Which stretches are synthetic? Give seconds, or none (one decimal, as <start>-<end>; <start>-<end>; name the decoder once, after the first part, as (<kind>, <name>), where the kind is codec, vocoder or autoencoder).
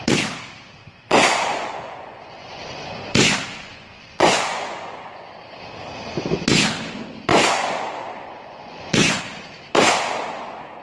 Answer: 0.8-5.3 (vocoder, Vocos); 7.3-9.2